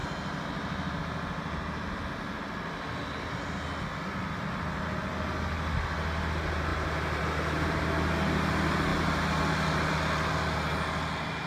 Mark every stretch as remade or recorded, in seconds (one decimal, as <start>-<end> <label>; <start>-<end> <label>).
0.0-11.5 recorded